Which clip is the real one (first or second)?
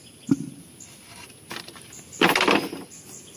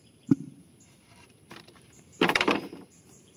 first